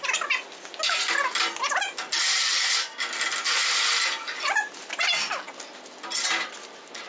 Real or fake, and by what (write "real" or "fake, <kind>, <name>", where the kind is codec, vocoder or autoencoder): real